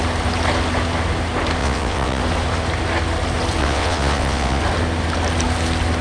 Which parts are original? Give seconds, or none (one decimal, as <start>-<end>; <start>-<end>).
0.0-1.6; 2.2-3.6; 4.6-6.0